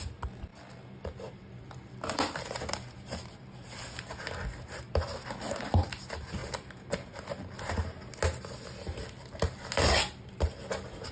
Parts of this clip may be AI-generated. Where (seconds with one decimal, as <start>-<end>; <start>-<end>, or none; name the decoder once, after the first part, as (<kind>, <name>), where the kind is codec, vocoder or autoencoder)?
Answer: none